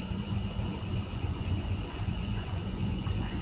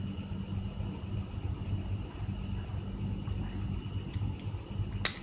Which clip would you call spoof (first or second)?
first